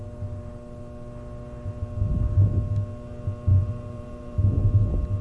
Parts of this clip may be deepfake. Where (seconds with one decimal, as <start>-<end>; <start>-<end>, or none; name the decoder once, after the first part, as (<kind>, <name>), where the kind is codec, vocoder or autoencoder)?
3.5-4.4 (vocoder, BigVGAN v2)